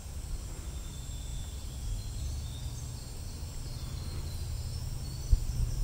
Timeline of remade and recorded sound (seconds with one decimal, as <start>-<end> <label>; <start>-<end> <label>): 0.0-5.8 recorded